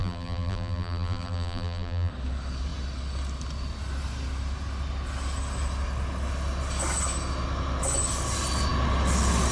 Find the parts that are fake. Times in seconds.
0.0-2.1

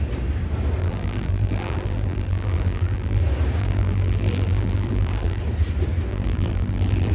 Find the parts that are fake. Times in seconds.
0.8-3.2; 3.6-5.4; 6.1-7.1

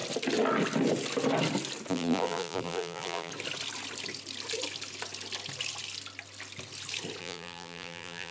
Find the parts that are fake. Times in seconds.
1.9-3.3; 7.2-8.3

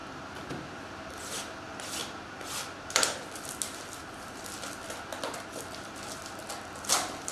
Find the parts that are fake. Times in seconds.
none

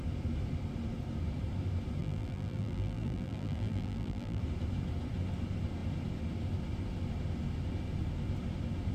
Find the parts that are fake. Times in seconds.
2.0-4.4